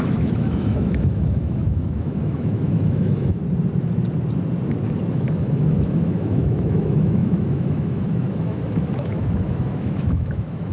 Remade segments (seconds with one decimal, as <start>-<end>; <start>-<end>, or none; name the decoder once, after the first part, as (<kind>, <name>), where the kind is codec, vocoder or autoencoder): 0.0-3.4 (autoencoder, DAC-VAE); 5.1-10.7